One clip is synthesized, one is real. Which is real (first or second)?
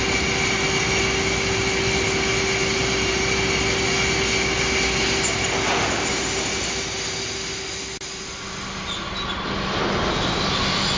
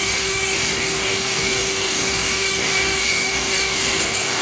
first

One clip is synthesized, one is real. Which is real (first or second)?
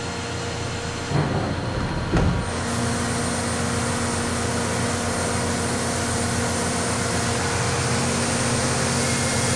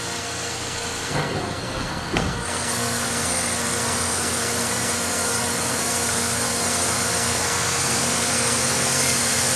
first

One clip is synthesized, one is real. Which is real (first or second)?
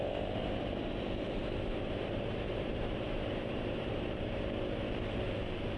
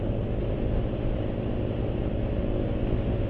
second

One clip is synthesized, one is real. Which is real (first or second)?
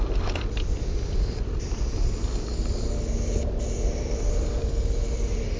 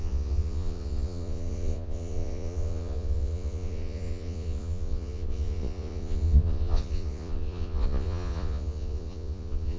first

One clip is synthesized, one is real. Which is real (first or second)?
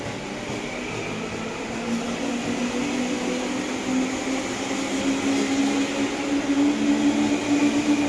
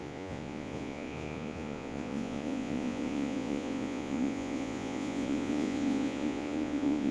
first